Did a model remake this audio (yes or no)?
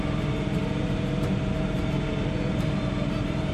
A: yes